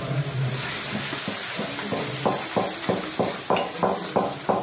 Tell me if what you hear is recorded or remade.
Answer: recorded